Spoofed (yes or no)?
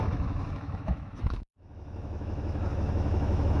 yes